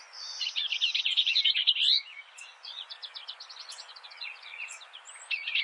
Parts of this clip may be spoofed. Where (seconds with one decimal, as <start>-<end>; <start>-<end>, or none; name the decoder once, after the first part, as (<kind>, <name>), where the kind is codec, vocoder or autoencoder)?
0.0-1.7 (vocoder, Vocos); 2.1-5.6